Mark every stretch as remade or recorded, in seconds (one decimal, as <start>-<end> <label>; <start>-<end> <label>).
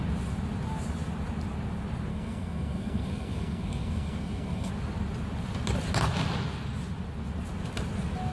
0.0-2.1 recorded; 2.1-4.7 remade; 4.7-8.3 recorded